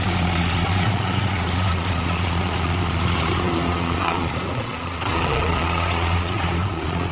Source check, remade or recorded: remade